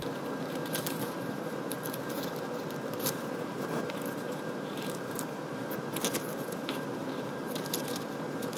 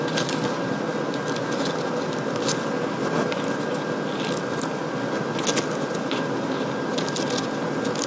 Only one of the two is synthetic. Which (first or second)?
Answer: first